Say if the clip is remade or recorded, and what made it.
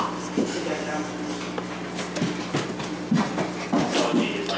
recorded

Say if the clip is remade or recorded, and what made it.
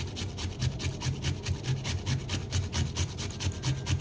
recorded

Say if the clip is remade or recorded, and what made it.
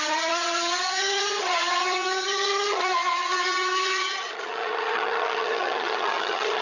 remade, vocoder, HiFi-GAN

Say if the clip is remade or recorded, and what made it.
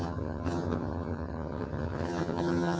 remade, vocoder, HiFi-GAN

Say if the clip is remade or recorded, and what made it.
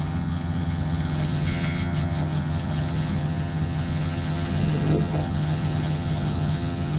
remade, vocoder, HiFi-GAN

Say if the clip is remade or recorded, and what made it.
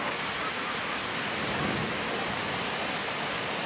recorded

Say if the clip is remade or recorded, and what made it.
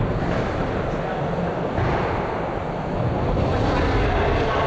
recorded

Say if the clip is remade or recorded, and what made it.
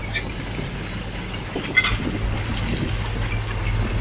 recorded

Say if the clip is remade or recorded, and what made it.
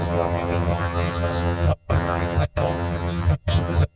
remade, vocoder, HiFi-GAN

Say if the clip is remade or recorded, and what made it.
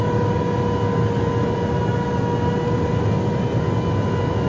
recorded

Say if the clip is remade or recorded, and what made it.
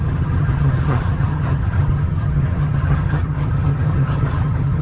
remade, vocoder, HiFi-GAN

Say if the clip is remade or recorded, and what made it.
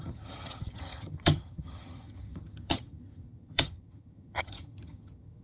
remade, vocoder, HiFi-GAN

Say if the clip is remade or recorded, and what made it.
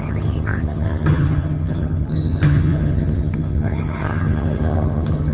remade, vocoder, HiFi-GAN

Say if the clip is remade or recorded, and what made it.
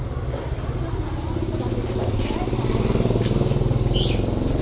recorded